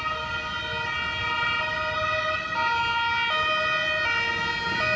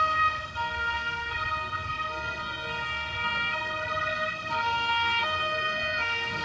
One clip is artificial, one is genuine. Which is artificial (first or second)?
second